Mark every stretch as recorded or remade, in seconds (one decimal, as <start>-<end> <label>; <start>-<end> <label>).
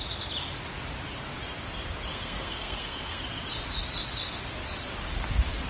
0.0-2.1 recorded; 2.1-3.2 remade; 3.2-5.7 recorded